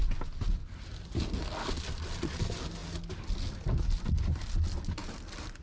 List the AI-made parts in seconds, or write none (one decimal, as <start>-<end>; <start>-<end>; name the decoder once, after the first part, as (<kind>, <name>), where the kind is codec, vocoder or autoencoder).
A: none